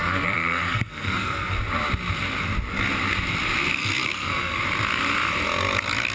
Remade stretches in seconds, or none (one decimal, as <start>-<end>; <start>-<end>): 0.0-1.6; 3.8-4.6